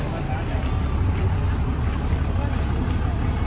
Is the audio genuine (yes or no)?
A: yes